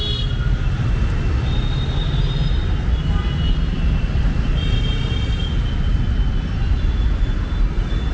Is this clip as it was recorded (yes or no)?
yes